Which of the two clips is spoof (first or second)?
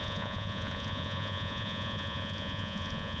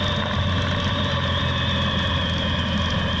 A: first